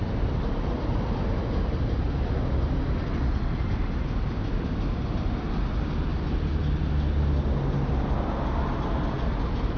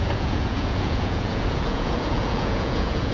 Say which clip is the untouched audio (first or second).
first